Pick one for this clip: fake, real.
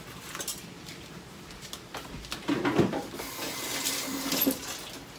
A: real